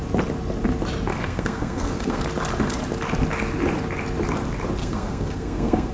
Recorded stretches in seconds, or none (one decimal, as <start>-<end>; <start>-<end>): 0.0-1.1; 2.2-4.8